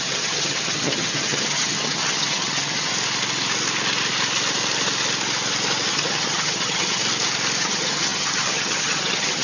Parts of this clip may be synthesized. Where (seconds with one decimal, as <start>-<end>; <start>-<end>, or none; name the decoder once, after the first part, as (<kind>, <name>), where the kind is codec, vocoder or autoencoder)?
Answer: 0.0-2.9 (vocoder, HiFi-GAN); 5.9-7.0; 7.6-9.4